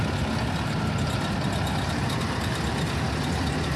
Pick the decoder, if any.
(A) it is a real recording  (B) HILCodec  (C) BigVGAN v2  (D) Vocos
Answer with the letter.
A